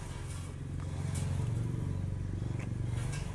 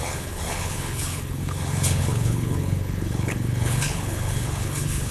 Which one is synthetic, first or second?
second